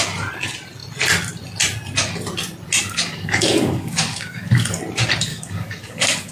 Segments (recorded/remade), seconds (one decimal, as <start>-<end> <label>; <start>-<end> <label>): 0.0-2.8 recorded; 2.8-4.8 remade; 4.8-5.3 recorded; 5.3-6.3 remade

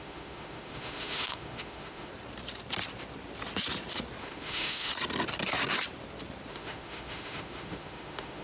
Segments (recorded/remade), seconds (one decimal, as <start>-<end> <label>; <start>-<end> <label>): 0.0-2.1 remade; 2.1-4.2 recorded; 4.2-4.9 remade; 4.9-6.5 recorded; 6.5-8.4 remade

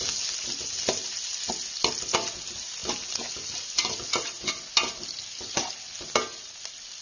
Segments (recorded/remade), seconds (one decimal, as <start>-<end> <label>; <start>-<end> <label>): 0.0-7.0 recorded

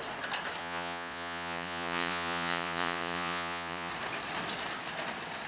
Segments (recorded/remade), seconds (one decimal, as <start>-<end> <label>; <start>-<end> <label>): 0.0-0.6 recorded; 0.6-3.9 remade; 3.9-5.5 recorded